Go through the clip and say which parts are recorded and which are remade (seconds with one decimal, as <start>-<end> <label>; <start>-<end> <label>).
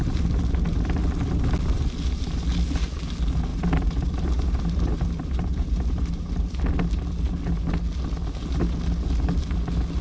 0.0-3.5 recorded; 3.5-6.6 remade; 6.6-10.0 recorded